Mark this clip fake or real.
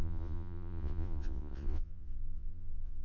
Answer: fake